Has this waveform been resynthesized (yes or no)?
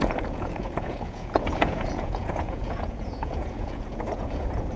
yes